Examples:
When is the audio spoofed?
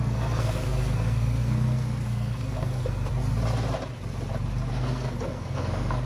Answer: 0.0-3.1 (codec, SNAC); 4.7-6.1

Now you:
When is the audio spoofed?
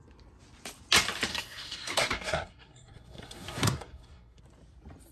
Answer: 1.3-4.4 (codec, SNAC)